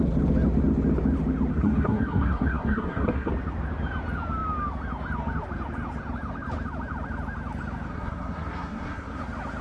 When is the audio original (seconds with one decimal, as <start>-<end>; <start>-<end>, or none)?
0.0-1.5; 3.3-7.9; 9.2-9.6